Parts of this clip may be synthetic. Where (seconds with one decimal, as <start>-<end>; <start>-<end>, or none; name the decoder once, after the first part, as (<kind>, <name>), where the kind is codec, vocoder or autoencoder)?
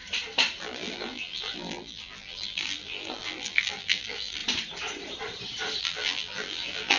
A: 0.6-4.4 (vocoder, BigVGAN v2); 5.8-7.0